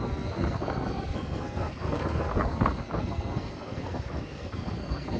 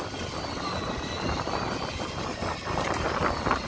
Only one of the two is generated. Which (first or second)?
first